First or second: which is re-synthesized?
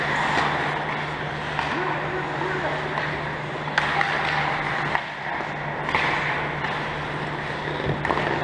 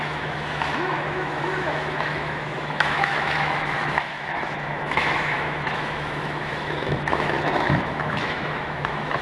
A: second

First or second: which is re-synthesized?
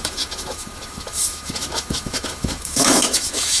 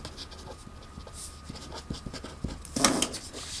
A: first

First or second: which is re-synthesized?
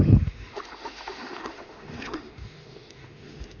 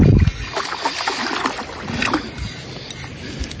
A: first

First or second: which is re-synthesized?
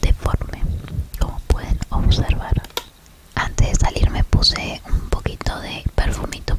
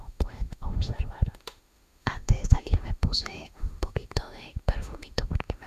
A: second